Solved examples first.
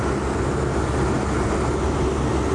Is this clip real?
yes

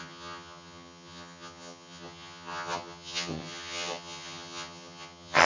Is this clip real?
no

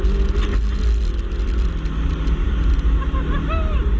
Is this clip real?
yes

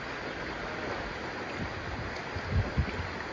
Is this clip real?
yes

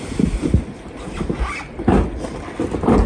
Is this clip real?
yes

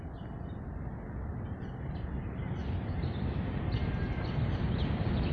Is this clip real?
yes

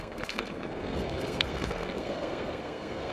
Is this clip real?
no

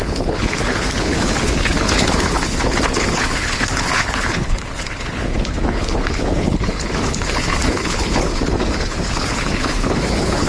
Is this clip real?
no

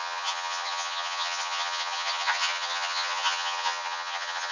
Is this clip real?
no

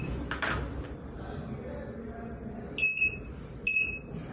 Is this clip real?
yes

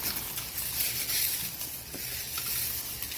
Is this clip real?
yes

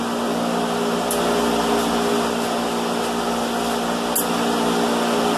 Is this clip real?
yes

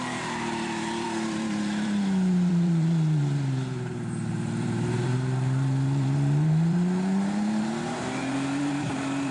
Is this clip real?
no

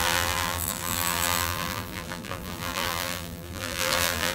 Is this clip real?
no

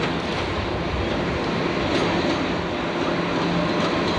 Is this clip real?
yes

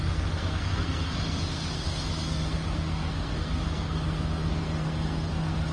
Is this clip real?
no